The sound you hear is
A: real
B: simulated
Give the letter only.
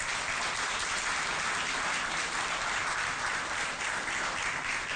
A